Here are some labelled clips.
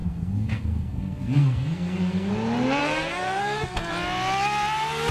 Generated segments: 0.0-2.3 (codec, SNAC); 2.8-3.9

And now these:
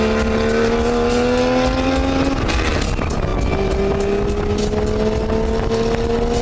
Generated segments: none